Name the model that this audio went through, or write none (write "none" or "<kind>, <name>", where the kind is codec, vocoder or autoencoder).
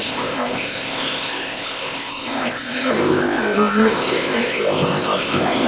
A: codec, ZipCodec